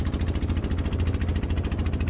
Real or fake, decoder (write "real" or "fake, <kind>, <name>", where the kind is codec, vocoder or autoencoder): real